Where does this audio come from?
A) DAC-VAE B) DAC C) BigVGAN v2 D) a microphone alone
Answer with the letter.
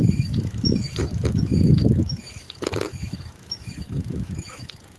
A